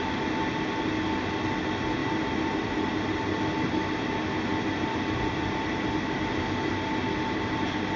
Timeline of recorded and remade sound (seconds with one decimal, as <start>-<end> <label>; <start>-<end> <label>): 0.0-2.0 recorded; 2.0-3.2 remade; 3.2-4.5 recorded; 4.5-5.9 remade; 5.9-8.0 recorded